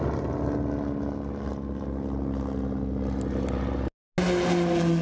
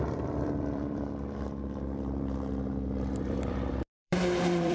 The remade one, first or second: second